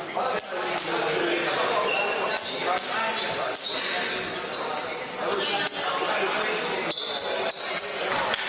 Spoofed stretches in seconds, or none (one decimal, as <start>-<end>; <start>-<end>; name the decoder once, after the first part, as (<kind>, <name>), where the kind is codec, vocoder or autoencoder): none